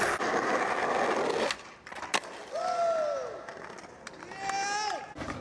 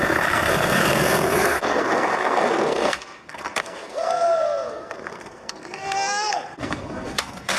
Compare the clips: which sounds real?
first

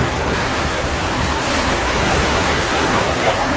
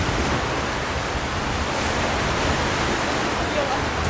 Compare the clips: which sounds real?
second